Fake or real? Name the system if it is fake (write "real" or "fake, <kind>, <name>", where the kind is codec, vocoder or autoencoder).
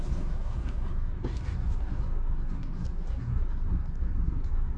fake, codec, SNAC